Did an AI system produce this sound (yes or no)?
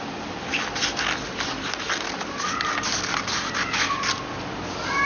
no